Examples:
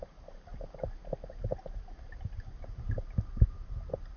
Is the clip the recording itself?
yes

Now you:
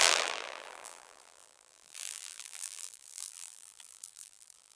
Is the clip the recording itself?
no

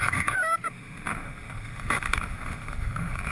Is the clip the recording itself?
no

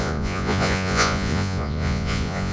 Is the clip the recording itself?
no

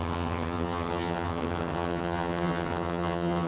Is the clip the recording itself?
no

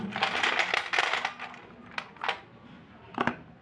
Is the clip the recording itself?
yes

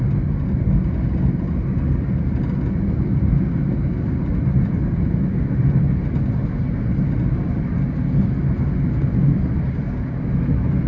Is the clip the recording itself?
yes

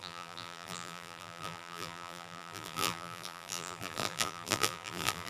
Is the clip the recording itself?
no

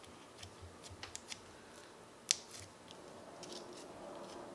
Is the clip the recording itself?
yes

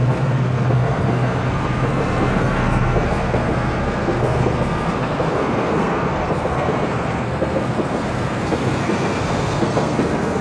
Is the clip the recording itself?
no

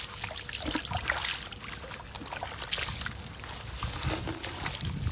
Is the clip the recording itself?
yes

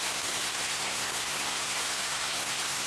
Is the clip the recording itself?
no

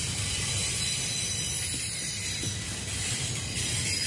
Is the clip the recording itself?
no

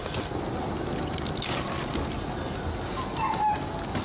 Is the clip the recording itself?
yes